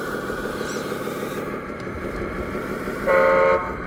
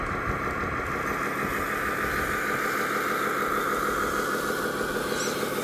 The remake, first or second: first